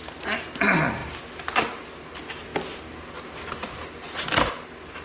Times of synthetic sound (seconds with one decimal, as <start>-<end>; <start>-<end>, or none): none